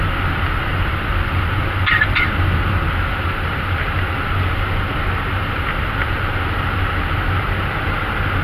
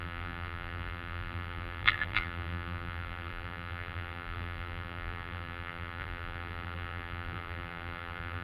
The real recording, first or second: first